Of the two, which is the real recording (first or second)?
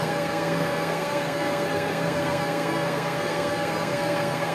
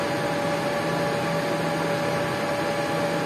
second